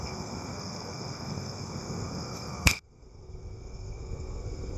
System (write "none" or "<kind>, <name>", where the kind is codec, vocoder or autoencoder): codec, SNAC